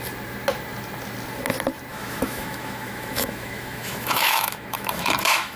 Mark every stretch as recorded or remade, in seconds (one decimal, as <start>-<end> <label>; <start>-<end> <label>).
0.0-1.9 recorded; 1.9-5.6 remade